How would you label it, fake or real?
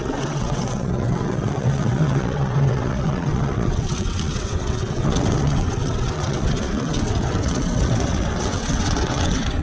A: fake